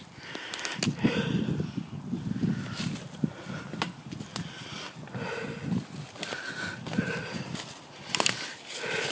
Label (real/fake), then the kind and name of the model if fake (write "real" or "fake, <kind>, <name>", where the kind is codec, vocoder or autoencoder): real